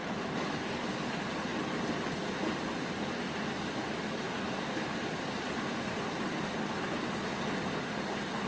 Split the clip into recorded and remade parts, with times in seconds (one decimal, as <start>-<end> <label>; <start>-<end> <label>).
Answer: 0.0-0.9 remade; 0.9-8.5 recorded